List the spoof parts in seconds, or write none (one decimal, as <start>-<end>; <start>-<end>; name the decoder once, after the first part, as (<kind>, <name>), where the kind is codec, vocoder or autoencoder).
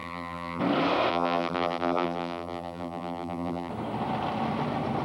0.0-0.6 (vocoder, BigVGAN v2); 1.1-3.7